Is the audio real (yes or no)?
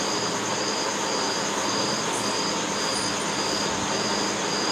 yes